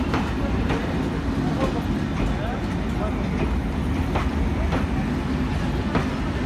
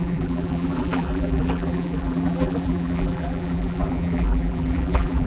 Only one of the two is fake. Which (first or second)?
second